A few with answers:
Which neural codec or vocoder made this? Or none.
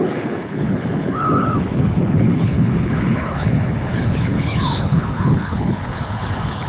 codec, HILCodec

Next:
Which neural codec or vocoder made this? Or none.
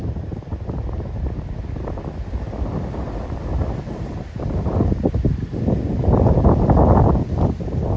none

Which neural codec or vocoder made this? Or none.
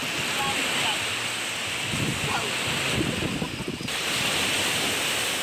none